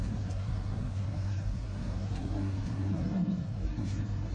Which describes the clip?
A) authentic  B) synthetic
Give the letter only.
B